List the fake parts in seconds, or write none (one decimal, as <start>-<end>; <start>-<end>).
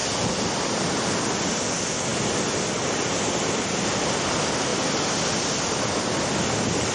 none